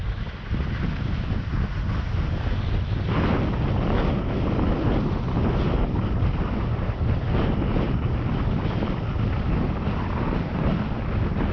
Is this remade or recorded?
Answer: recorded